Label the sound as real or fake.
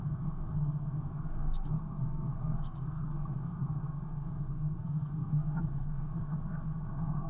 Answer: fake